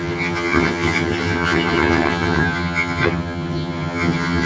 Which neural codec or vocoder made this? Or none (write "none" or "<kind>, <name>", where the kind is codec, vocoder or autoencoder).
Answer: vocoder, HiFi-GAN